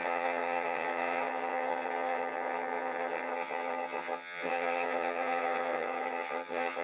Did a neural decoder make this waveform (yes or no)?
yes